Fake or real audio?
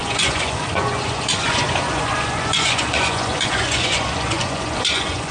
fake